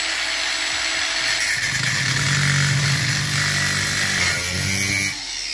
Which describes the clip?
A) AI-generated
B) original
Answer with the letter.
B